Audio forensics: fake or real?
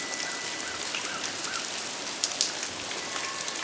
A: real